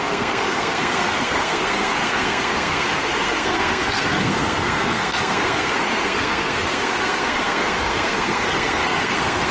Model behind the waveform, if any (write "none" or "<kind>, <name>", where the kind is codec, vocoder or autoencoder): codec, SNAC